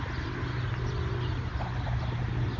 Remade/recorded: recorded